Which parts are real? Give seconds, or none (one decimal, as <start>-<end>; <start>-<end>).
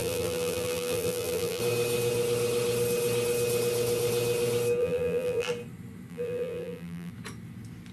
1.6-4.8; 5.5-6.1; 7.1-7.9